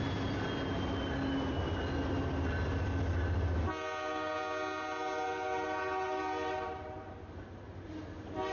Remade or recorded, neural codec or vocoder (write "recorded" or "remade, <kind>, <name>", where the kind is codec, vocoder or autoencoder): recorded